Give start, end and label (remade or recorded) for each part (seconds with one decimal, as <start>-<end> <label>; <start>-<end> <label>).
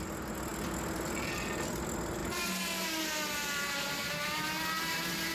0.0-5.3 recorded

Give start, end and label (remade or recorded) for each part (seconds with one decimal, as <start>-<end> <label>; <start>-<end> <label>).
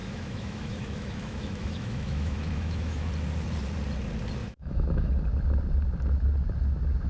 0.0-3.1 remade; 3.1-4.4 recorded; 4.4-5.1 remade; 5.1-7.1 recorded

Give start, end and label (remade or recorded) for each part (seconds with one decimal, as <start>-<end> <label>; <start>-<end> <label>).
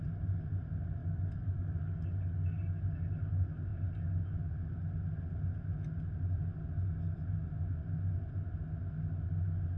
0.0-1.0 recorded; 1.0-2.8 remade; 2.8-9.8 recorded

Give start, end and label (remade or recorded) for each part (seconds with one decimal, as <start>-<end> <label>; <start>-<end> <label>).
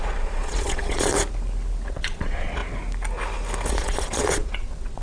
0.0-1.1 remade; 1.1-1.9 recorded; 1.9-2.6 remade; 2.6-3.7 recorded; 3.7-5.0 remade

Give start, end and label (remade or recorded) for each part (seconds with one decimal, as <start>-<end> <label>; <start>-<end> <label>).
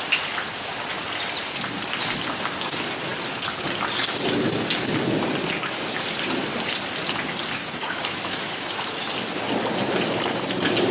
0.0-7.6 recorded; 7.6-9.1 remade; 9.1-10.9 recorded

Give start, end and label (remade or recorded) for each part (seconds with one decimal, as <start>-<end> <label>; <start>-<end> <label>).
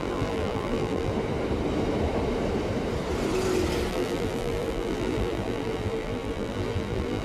0.0-1.1 remade; 1.1-3.9 recorded; 3.9-7.2 remade